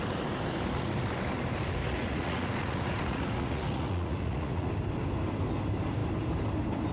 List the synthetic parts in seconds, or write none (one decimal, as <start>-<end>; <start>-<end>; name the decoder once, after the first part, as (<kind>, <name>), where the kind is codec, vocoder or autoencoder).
1.8-4.7 (vocoder, Vocos)